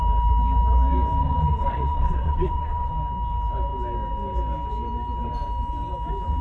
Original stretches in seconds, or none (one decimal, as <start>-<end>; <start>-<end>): 0.0-1.2; 2.9-6.4